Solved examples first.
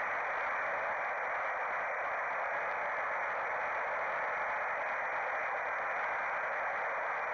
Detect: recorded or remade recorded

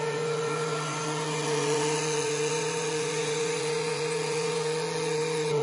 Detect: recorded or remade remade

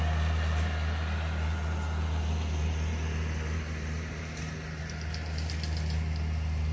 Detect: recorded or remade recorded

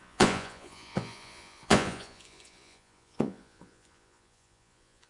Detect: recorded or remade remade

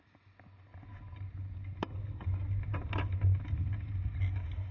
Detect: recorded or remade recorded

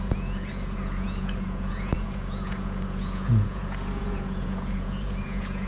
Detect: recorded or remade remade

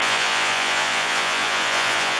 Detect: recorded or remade remade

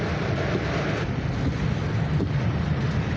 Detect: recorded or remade recorded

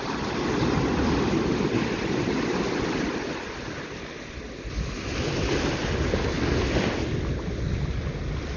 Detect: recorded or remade recorded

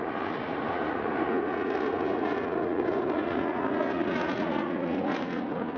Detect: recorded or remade remade